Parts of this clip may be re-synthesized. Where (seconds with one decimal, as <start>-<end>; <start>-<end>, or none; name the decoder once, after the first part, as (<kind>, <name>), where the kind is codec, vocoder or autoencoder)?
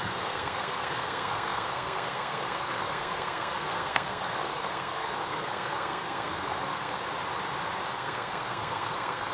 0.0-7.0 (codec, SNAC); 7.9-9.3